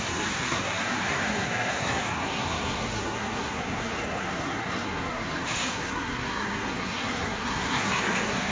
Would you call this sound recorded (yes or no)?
no